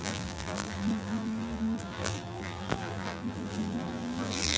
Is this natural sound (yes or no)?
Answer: no